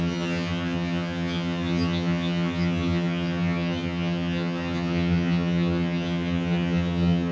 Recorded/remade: remade